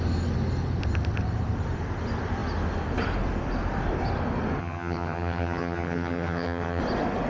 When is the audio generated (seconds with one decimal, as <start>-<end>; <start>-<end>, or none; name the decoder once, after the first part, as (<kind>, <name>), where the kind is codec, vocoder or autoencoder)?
4.6-6.8 (vocoder, HiFi-GAN)

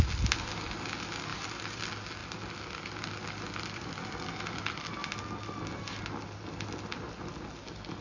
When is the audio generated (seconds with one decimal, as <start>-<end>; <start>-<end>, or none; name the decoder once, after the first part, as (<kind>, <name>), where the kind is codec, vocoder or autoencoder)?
1.3-1.8 (vocoder, BigVGAN v2)